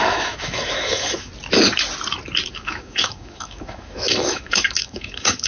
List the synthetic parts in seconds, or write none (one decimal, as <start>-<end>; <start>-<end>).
0.0-1.3; 2.5-5.5